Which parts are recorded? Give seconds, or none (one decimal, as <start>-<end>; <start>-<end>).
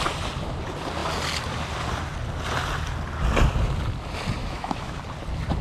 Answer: 0.0-4.4; 5.0-5.6